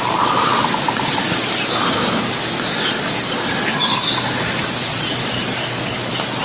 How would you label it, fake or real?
real